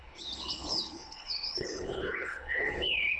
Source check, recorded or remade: remade